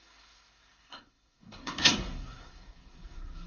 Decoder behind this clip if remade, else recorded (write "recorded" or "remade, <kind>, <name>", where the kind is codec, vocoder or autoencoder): remade, codec, SNAC